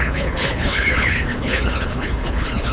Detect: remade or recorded remade